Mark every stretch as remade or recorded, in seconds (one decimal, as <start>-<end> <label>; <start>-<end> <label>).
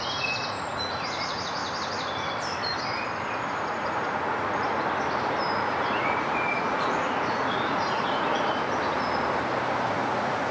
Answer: 0.0-1.6 remade; 1.6-3.5 recorded; 3.5-4.7 remade; 4.7-5.5 recorded; 5.5-8.3 remade; 8.3-9.9 recorded; 9.9-10.5 remade